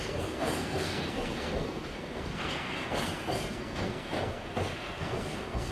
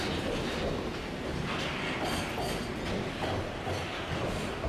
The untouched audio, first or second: second